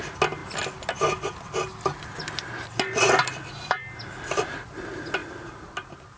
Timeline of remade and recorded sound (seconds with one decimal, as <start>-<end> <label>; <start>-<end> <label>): 0.0-6.2 recorded